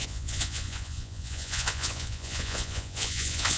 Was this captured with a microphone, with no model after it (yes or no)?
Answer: no